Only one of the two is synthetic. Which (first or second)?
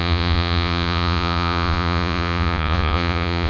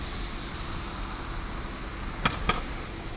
first